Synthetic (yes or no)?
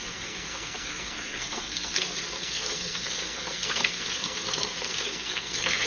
yes